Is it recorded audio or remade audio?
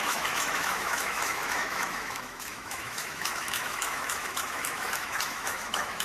remade